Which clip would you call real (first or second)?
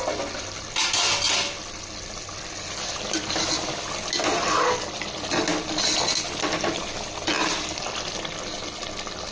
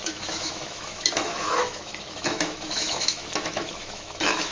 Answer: first